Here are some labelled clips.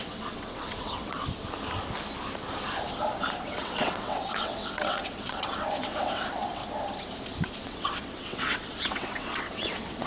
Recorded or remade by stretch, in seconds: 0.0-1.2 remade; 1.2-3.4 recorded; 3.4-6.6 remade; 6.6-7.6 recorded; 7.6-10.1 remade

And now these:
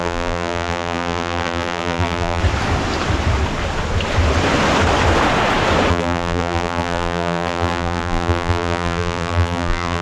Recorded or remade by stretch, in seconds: 0.0-2.4 remade; 2.4-5.9 recorded; 5.9-10.0 remade

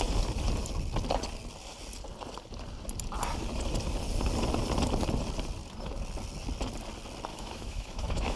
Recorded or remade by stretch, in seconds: 0.0-7.3 recorded; 7.3-8.4 remade

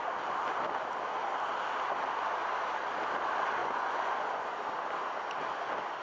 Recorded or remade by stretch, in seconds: 0.0-3.6 recorded; 3.6-4.6 remade; 4.6-6.0 recorded

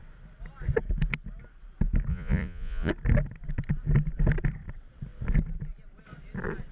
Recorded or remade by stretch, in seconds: 0.0-2.1 recorded; 2.1-2.9 remade; 2.9-6.7 recorded

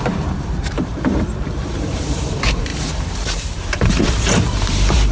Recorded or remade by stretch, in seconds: 0.0-5.1 remade